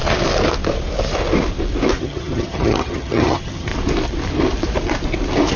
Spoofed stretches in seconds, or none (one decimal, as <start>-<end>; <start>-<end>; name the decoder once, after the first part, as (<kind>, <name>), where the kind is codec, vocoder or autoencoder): 2.0-3.7 (vocoder, HiFi-GAN)